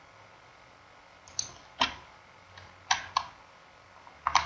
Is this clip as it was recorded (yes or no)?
yes